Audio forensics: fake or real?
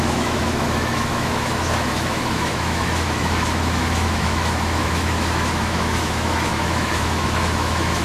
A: fake